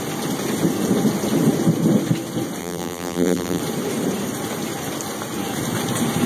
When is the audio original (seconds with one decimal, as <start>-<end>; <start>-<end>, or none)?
0.0-2.6; 3.6-6.3